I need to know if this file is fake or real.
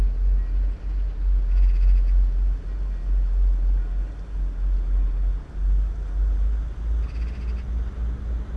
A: real